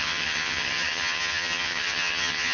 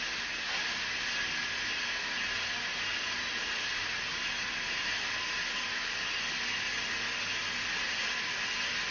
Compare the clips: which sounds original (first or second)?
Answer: second